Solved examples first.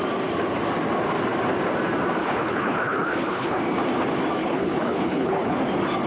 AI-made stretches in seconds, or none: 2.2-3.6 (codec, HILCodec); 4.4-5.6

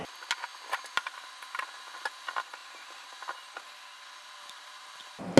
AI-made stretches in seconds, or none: none

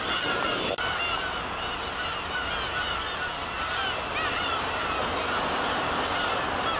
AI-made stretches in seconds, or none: none

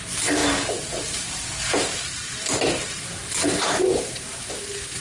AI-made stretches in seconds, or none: 1.9-4.6 (vocoder, BigVGAN v2)

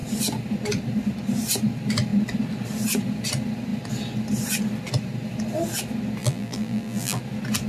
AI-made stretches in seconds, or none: 6.2-7.2 (vocoder, BigVGAN v2)

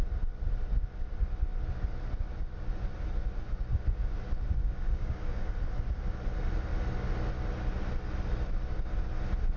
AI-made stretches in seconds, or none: 4.6-5.5 (codec, DAC)

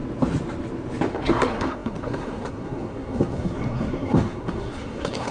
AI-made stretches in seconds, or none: 1.1-5.3 (codec, SNAC)

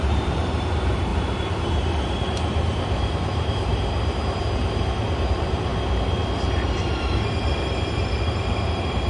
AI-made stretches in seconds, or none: 0.0-5.7 (vocoder, BigVGAN v2); 6.5-9.1